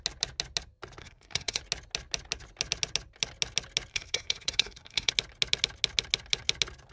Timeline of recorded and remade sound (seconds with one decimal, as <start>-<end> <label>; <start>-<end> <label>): 0.0-1.0 recorded; 1.0-1.6 remade; 1.6-3.9 recorded; 3.9-5.1 remade; 5.1-6.9 recorded